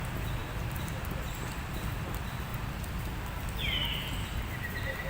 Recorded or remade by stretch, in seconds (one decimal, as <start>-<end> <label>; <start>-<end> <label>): 0.0-5.1 recorded